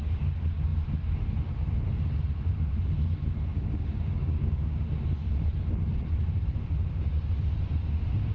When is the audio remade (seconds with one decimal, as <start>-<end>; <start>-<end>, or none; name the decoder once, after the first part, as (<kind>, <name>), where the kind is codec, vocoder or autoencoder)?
3.5-4.9 (codec, DAC)

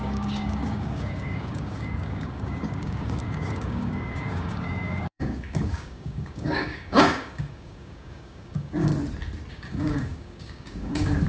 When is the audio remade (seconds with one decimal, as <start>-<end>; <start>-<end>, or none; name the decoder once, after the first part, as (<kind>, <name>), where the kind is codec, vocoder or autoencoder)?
0.0-8.9 (codec, DAC); 9.5-11.3

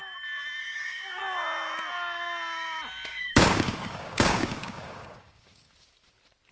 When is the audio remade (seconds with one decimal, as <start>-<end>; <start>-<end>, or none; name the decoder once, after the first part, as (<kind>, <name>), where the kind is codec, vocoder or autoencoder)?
0.6-1.2 (codec, DAC); 3.1-5.7

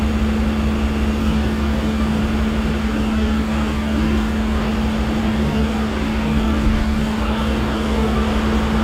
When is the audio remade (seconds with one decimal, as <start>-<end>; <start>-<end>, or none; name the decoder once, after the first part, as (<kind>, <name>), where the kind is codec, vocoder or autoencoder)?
1.2-2.2 (codec, DAC); 2.8-4.7; 5.2-8.3

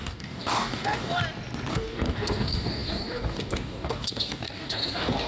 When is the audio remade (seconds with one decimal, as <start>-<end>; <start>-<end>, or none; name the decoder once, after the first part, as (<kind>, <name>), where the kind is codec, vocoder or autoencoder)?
0.0-1.2 (codec, DAC); 1.7-5.3

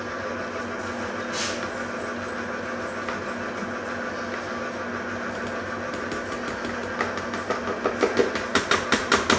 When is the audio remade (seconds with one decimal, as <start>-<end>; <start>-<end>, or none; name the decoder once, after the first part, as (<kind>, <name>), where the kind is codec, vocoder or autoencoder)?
none